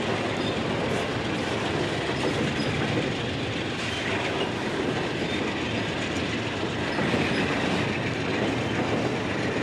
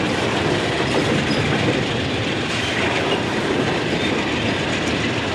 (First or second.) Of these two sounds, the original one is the first